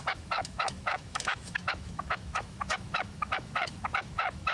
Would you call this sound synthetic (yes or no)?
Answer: yes